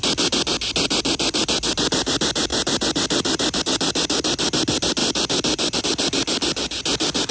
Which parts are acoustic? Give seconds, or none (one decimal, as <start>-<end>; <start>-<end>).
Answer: 0.0-2.5; 3.6-5.0; 5.8-7.3